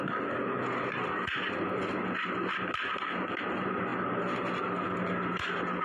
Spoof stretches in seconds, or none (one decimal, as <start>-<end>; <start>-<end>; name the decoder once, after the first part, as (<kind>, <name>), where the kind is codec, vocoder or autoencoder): none